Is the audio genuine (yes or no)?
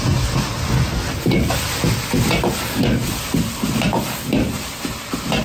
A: yes